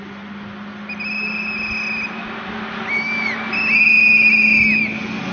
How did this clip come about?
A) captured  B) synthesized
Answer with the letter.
A